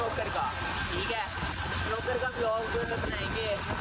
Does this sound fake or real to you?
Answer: real